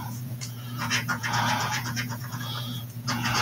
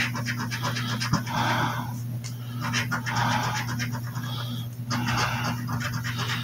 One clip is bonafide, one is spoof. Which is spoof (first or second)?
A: first